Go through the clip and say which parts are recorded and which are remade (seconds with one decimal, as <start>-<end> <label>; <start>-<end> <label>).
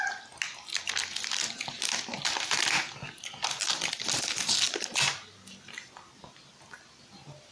0.0-2.1 recorded; 2.1-4.0 remade; 4.0-7.5 recorded